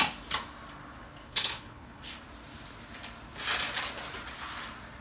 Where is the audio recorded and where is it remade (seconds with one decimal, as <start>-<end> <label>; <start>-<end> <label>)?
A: 0.0-1.2 recorded; 1.2-2.0 remade; 2.0-5.0 recorded